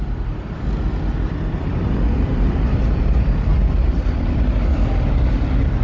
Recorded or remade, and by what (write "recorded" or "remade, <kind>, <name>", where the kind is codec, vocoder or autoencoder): remade, vocoder, BigVGAN v2